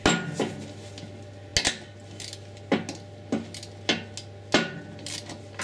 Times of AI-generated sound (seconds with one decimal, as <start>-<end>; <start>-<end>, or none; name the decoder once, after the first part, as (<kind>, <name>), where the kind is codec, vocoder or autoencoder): none

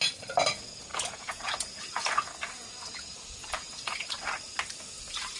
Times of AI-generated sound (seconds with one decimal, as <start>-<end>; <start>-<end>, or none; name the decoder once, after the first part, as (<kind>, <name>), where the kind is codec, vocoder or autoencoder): 0.9-4.1 (vocoder, Vocos)